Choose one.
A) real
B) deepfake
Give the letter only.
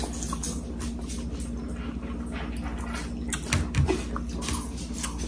A